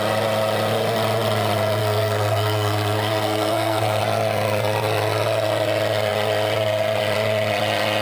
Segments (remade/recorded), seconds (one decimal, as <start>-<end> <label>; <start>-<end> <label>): 0.0-1.8 recorded; 1.8-4.0 remade; 4.0-8.0 recorded